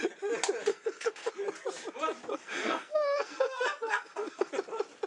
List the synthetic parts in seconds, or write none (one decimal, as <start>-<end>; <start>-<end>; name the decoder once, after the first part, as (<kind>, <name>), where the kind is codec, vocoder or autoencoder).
0.7-1.3 (codec, SNAC); 2.3-4.5